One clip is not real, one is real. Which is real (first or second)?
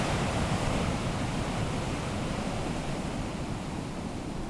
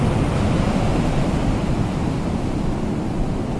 second